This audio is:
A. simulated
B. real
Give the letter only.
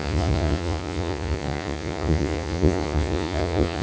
A